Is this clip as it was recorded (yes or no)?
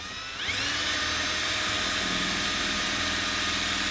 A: yes